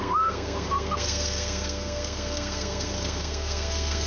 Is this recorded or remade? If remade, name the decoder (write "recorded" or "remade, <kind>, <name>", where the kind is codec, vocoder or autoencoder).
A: remade, codec, SNAC